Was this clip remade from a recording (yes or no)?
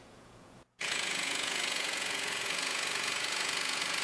yes